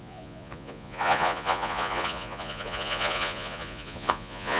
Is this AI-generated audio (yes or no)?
yes